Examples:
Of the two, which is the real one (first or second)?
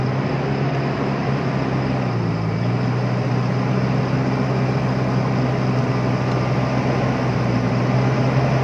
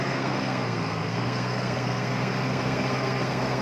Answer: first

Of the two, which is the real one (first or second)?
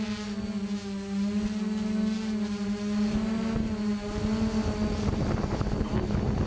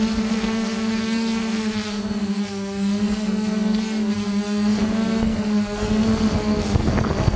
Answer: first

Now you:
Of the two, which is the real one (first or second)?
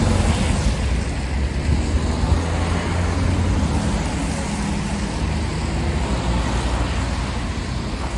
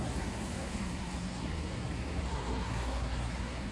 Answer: first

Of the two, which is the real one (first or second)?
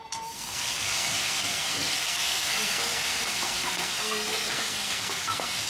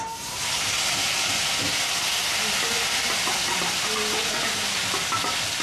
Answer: second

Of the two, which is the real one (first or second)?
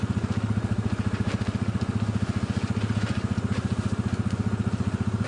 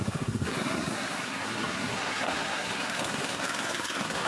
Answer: first